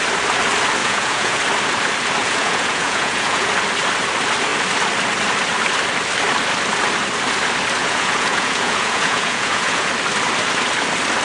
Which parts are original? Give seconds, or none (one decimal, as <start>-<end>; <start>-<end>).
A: 0.0-0.8; 1.4-2.2; 3.5-7.8; 9.9-11.2